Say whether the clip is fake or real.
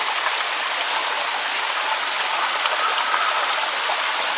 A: real